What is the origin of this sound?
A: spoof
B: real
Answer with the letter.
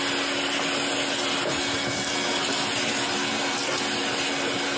B